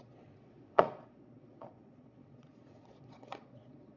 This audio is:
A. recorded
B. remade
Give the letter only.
B